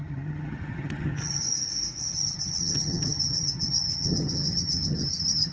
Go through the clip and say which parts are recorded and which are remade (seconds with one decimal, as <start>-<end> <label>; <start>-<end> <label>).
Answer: 0.0-1.4 remade; 1.4-2.0 recorded; 2.0-5.5 remade